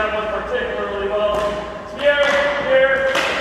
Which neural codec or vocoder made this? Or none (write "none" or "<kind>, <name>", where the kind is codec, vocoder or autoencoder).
none